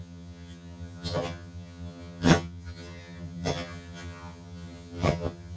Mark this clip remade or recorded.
remade